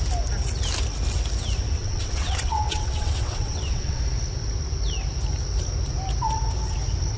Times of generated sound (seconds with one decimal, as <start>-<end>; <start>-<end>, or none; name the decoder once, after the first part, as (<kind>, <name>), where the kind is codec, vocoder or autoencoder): 1.8-4.0 (vocoder, WaveNeXt)